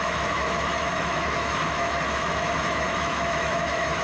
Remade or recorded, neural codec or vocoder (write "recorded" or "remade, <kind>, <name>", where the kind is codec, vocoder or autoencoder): remade, autoencoder, DAC-VAE